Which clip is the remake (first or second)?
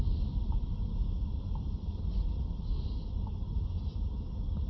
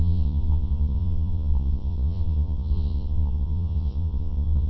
second